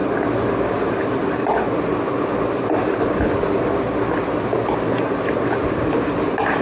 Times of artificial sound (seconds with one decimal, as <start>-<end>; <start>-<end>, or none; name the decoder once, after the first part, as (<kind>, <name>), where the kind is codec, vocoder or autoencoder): none